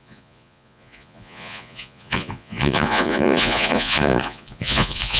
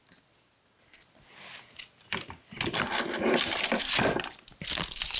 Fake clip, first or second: first